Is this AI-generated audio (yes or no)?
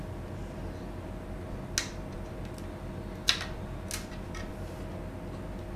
no